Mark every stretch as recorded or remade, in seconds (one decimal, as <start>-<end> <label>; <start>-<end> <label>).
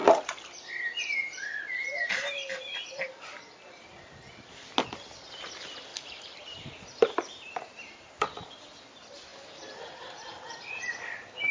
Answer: 0.0-5.9 recorded; 5.9-8.8 remade; 8.8-11.5 recorded